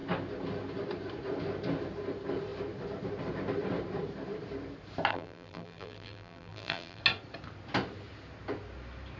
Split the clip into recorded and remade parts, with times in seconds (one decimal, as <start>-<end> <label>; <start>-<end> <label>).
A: 0.0-5.1 recorded; 5.1-7.0 remade; 7.0-9.2 recorded